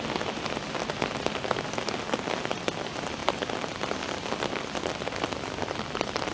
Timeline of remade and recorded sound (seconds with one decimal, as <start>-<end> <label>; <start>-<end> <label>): 0.0-6.3 recorded